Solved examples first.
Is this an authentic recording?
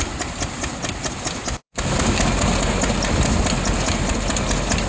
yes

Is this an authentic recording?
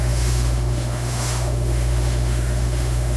no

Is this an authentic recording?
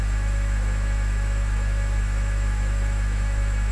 no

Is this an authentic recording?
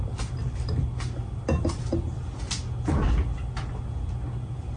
yes